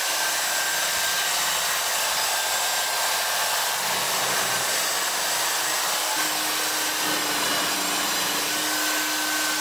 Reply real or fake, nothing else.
real